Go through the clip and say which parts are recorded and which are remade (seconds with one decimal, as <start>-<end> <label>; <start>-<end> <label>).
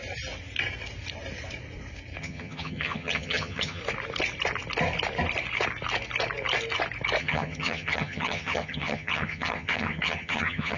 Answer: 0.0-2.2 recorded; 2.2-3.8 remade; 3.8-7.2 recorded; 7.2-10.8 remade